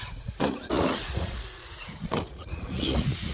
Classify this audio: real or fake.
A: fake